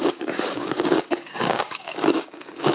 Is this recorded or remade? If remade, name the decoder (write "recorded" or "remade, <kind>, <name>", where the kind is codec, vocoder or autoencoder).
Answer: remade, codec, DAC